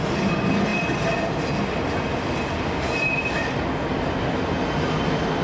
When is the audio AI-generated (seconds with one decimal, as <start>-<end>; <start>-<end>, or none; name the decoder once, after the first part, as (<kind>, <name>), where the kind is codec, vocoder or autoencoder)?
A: none